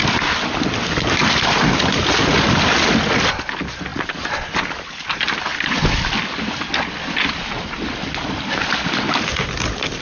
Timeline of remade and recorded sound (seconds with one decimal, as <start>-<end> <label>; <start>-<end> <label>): 0.0-10.0 recorded